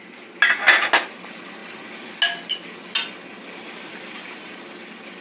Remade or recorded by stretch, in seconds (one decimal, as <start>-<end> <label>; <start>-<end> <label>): 0.0-5.2 recorded